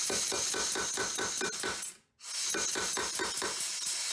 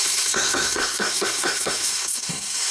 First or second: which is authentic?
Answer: first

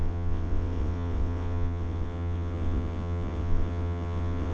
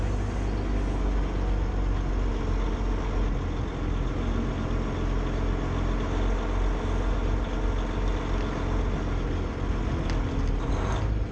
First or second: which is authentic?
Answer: second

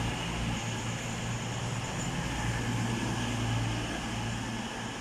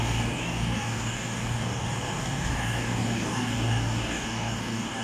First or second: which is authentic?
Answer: first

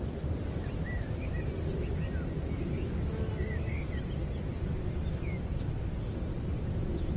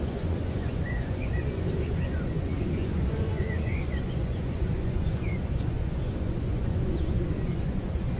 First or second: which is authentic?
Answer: first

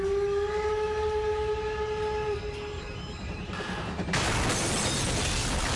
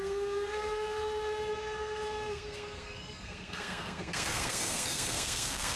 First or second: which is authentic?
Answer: first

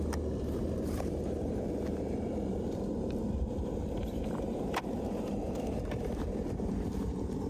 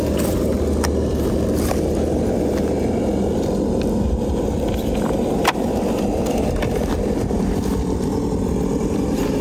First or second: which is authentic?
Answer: second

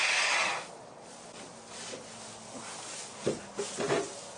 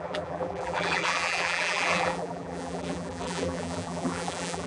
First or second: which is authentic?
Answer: first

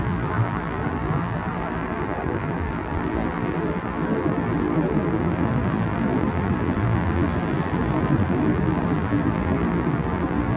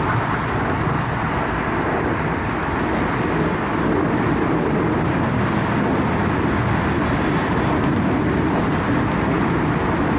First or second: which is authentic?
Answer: second